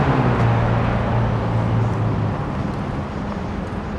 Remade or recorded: recorded